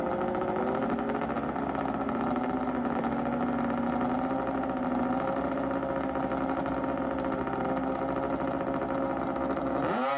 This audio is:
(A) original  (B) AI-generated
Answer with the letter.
A